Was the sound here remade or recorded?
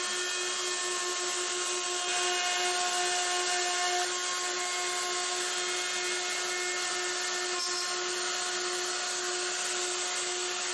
recorded